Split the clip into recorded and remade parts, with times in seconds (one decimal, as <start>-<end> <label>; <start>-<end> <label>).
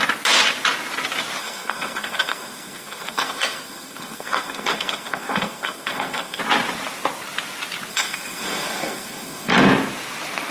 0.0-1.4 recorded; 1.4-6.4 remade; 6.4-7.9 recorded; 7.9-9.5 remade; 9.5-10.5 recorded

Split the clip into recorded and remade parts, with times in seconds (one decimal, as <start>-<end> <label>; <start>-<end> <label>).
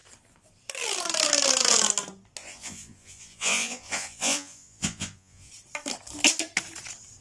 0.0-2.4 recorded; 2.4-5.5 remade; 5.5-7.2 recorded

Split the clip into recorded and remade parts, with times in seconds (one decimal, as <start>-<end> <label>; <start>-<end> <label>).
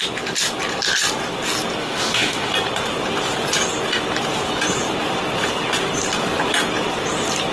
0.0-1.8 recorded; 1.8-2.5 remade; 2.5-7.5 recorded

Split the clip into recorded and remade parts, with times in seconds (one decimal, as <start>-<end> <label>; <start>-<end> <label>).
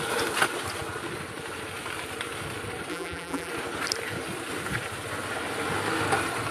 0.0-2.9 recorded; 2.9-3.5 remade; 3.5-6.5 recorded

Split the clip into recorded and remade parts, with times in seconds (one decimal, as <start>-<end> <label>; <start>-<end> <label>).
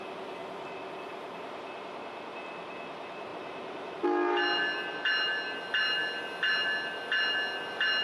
0.0-0.4 recorded; 0.4-1.4 remade; 1.4-8.0 recorded